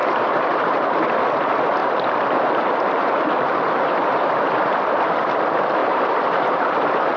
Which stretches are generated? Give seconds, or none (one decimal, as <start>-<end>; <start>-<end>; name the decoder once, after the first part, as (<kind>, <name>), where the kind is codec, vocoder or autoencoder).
0.0-1.0 (vocoder, BigVGAN v2); 1.8-4.5; 5.8-7.2